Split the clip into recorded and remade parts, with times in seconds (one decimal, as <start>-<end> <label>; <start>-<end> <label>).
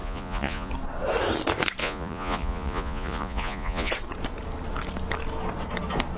0.0-0.7 remade; 0.7-1.8 recorded; 1.8-3.9 remade; 3.9-6.2 recorded